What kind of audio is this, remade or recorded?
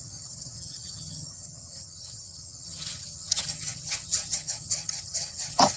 remade